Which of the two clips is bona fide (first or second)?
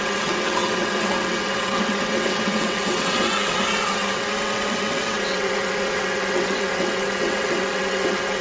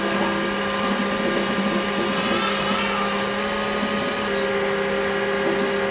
second